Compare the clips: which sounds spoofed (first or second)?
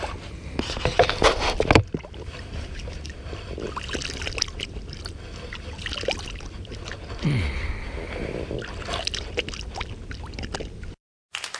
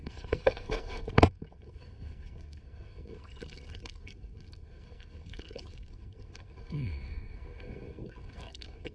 second